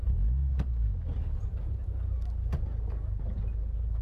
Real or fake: real